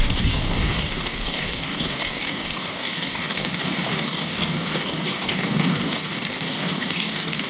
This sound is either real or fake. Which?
fake